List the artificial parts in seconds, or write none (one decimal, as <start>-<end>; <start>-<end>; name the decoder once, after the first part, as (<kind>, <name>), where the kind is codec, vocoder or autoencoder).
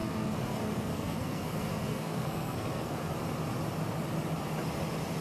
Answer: 0.0-3.1 (codec, SNAC)